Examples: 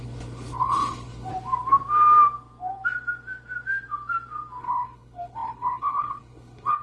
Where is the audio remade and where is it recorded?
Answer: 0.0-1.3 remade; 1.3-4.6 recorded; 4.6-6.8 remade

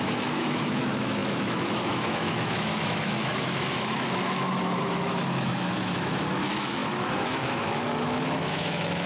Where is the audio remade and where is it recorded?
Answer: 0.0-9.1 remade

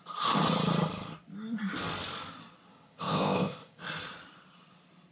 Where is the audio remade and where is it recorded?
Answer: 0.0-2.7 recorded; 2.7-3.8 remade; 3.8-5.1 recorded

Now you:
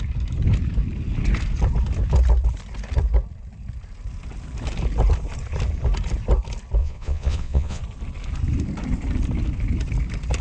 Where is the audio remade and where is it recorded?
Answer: 0.0-6.8 recorded; 6.8-7.8 remade; 7.8-10.4 recorded